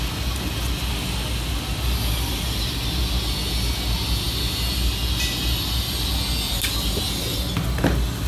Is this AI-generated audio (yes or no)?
no